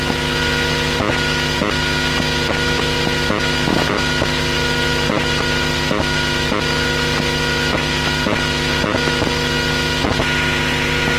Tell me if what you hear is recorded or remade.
recorded